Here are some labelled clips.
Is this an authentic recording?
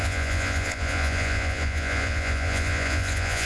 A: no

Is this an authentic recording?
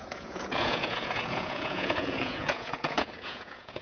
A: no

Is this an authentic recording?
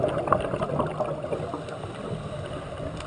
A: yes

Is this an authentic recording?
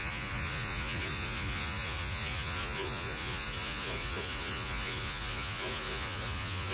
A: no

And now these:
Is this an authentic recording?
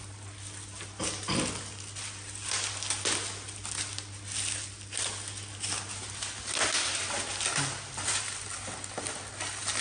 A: yes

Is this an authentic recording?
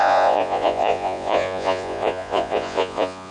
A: no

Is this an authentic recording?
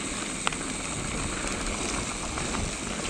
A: yes